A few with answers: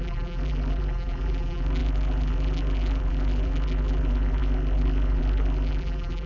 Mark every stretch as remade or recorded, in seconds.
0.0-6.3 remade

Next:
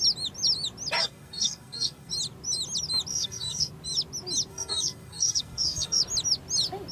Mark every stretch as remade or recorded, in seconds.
0.0-1.0 recorded; 1.0-2.1 remade; 2.1-3.1 recorded; 3.1-3.7 remade; 3.7-4.5 recorded; 4.5-6.0 remade; 6.0-6.9 recorded

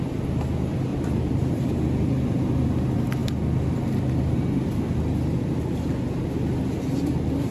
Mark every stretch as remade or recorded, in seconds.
0.0-0.9 recorded; 0.9-1.7 remade; 1.7-7.5 recorded

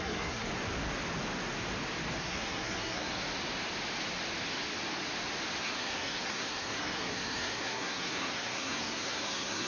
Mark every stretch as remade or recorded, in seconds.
0.0-0.5 remade; 0.5-2.2 recorded; 2.2-3.1 remade; 3.1-5.6 recorded; 5.6-9.7 remade

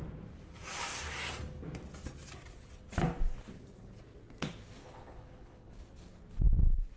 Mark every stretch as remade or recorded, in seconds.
0.0-4.8 recorded; 4.8-5.7 remade; 5.7-7.0 recorded